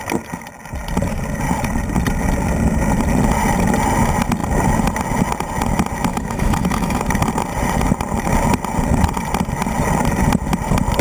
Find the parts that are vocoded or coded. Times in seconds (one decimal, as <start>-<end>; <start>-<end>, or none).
6.1-7.0